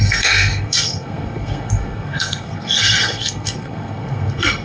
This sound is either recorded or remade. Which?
remade